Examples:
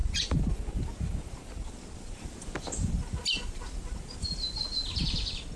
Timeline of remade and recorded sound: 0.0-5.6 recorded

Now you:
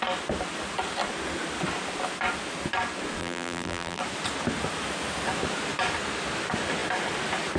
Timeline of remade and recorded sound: 0.0-3.2 recorded; 3.2-4.0 remade; 4.0-7.6 recorded

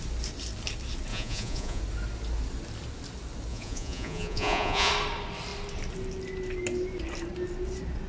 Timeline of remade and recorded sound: 0.0-1.1 recorded; 1.1-1.8 remade; 1.8-3.5 recorded; 3.5-4.9 remade; 4.9-8.1 recorded

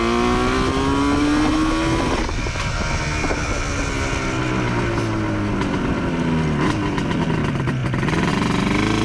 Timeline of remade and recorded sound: 0.0-9.0 recorded